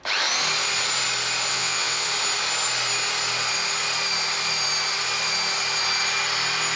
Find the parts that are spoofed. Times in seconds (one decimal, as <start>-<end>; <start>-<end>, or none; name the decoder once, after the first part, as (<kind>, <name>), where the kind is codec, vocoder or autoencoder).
1.5-2.1 (vocoder, WaveNeXt)